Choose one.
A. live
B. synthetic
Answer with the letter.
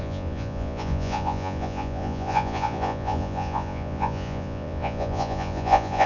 B